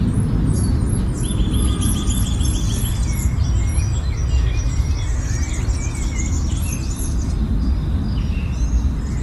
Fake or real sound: real